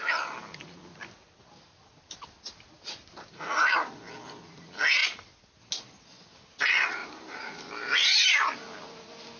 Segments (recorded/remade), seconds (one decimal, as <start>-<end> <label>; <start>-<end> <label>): 0.0-7.0 recorded; 7.0-7.5 remade; 7.5-9.4 recorded